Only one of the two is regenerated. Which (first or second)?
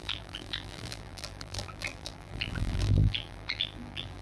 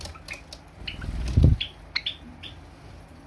first